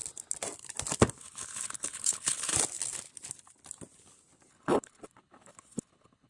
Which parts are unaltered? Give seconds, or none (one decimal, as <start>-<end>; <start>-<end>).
0.0-1.2; 2.5-4.5